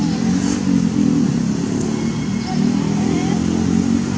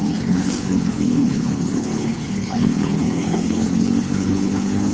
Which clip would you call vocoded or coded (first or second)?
second